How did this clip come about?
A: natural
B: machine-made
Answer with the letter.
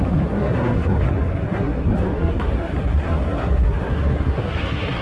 B